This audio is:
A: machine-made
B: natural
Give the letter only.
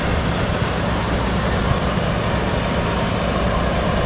B